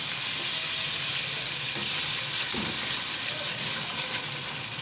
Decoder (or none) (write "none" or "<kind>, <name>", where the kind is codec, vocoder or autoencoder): none